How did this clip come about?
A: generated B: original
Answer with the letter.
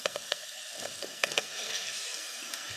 A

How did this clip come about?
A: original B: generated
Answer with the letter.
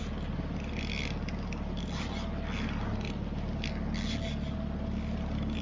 A